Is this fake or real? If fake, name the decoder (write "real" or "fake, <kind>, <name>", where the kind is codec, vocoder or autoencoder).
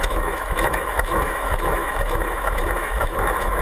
fake, autoencoder, DAC-VAE